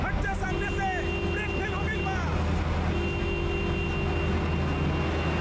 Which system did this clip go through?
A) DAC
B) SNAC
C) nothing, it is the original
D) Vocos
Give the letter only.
C